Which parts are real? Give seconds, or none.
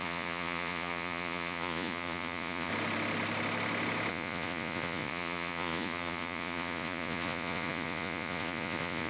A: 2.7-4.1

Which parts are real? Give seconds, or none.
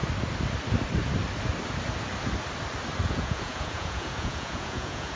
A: 0.0-3.1